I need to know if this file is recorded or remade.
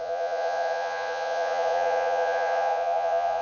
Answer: remade